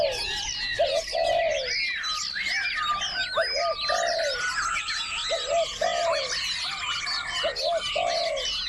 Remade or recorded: recorded